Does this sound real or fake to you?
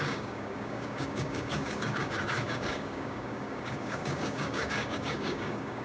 fake